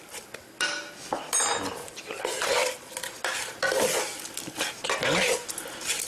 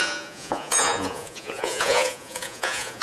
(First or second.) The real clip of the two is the first